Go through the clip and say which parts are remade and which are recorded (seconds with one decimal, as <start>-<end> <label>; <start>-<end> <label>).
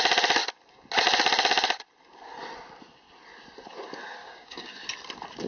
0.0-4.2 recorded; 4.2-4.7 remade; 4.7-5.5 recorded